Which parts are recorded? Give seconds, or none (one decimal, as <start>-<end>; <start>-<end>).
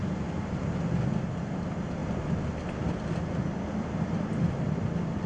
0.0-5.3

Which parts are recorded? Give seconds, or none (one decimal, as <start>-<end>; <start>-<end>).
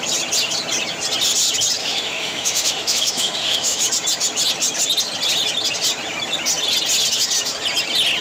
0.0-1.8; 3.8-8.2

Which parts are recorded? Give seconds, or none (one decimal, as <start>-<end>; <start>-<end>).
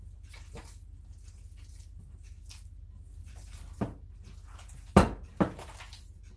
0.0-3.2; 3.8-6.4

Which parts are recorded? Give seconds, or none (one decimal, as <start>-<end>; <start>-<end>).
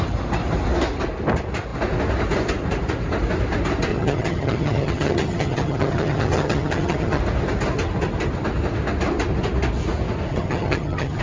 0.0-3.9; 7.2-10.3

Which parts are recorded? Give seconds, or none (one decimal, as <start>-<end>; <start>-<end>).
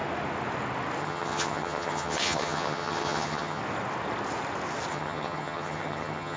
0.0-1.0; 3.6-4.9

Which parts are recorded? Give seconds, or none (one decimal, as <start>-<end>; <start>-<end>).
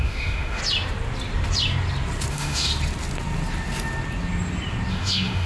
0.6-2.3; 2.7-4.9